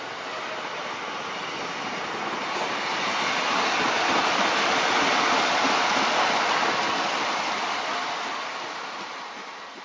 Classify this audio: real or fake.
real